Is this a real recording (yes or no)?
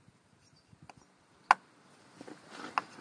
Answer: yes